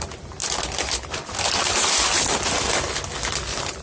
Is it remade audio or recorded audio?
recorded